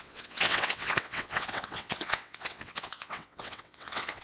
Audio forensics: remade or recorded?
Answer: remade